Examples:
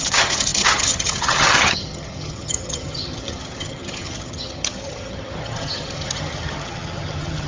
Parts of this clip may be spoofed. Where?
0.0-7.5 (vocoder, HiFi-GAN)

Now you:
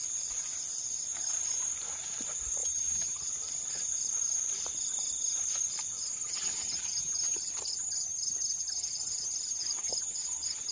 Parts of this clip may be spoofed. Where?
2.6-3.3 (vocoder, HiFi-GAN); 6.2-10.7